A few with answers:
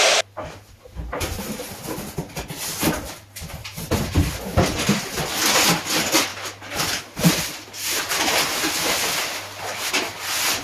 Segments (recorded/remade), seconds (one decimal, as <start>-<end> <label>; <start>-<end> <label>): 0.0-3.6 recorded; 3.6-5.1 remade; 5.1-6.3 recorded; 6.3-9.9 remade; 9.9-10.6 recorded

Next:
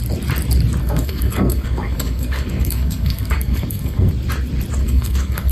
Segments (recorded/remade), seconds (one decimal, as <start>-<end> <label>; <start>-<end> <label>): 0.0-0.8 recorded; 0.8-4.1 remade; 4.1-4.8 recorded; 4.8-5.5 remade

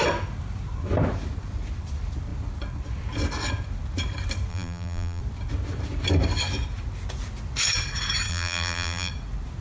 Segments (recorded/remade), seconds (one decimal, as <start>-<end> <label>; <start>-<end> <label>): 0.0-4.5 recorded; 4.5-5.2 remade; 5.2-8.3 recorded; 8.3-9.1 remade; 9.1-9.6 recorded

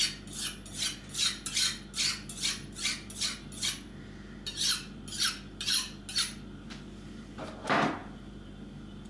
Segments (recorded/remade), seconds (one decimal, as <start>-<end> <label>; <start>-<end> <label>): 0.0-9.1 recorded